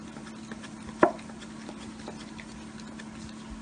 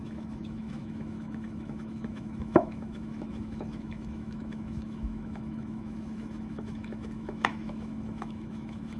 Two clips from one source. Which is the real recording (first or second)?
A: first